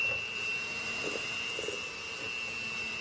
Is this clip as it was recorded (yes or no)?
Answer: yes